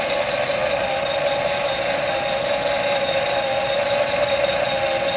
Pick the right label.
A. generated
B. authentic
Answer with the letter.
B